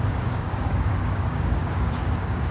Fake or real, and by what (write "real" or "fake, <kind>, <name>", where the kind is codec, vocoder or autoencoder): fake, codec, DAC